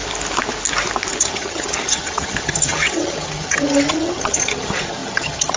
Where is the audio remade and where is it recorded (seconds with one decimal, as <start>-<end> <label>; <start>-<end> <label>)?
0.0-1.1 recorded; 1.1-5.6 remade